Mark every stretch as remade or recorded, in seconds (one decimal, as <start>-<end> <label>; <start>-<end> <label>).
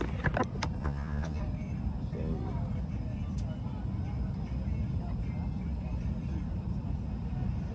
0.0-0.8 recorded; 0.8-1.4 remade; 1.4-7.7 recorded